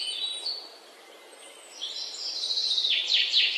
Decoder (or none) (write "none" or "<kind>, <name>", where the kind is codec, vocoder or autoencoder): vocoder, BigVGAN v2